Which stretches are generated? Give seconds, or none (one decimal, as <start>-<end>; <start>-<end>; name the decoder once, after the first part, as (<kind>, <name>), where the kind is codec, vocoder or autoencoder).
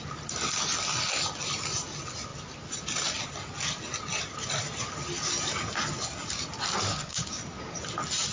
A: 6.9-7.4 (codec, DAC)